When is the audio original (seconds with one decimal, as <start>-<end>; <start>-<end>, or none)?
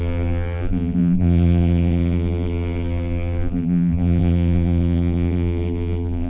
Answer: none